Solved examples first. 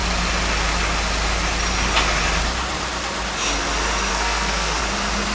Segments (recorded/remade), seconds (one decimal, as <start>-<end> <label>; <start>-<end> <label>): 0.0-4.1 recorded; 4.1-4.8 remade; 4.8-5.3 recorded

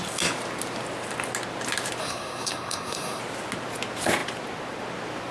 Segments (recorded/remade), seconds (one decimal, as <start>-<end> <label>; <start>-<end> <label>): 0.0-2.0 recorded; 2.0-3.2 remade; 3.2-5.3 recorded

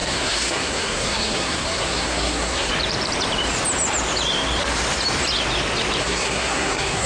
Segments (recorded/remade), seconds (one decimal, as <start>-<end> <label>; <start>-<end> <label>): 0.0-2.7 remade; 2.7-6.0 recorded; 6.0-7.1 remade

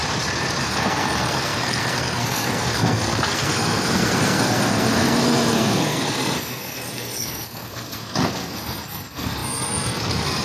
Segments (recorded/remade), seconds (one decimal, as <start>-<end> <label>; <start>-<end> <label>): 0.0-0.6 recorded; 0.6-10.4 remade

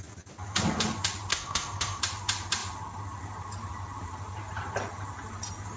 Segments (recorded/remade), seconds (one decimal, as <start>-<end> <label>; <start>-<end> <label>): 0.0-1.3 recorded; 1.3-2.0 remade; 2.0-5.8 recorded